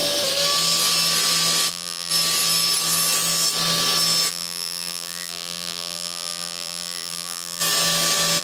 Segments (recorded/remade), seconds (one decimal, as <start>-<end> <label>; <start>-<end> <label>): 0.0-1.7 recorded; 1.7-2.1 remade; 2.1-4.3 recorded; 4.3-7.6 remade; 7.6-8.4 recorded